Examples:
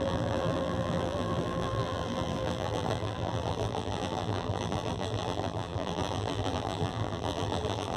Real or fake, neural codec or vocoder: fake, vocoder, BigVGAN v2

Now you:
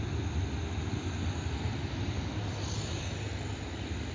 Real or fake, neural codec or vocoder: real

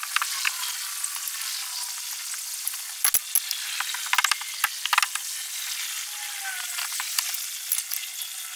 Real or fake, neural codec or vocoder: real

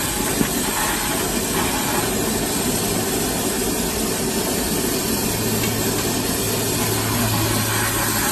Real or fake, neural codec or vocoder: real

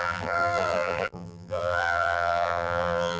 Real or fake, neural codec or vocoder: fake, vocoder, BigVGAN v2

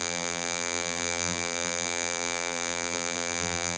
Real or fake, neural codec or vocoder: fake, vocoder, BigVGAN v2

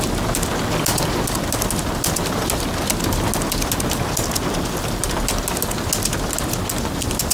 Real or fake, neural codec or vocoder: real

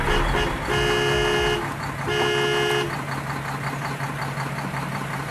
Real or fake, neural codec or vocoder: real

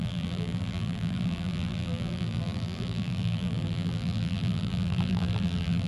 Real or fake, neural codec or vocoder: fake, vocoder, BigVGAN v2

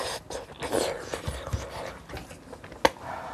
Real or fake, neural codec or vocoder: real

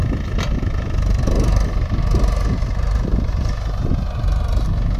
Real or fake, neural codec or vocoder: real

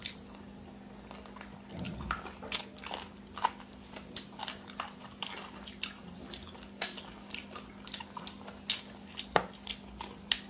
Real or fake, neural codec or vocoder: fake, vocoder, BigVGAN v2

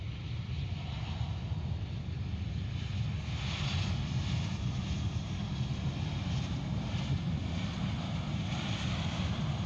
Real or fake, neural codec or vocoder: real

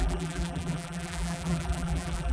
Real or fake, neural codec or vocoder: fake, vocoder, BigVGAN v2